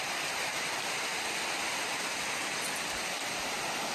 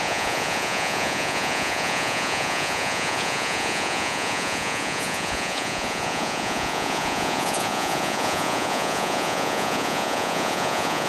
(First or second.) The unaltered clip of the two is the first